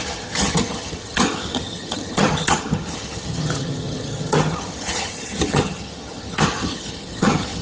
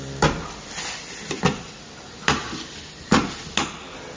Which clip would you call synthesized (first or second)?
first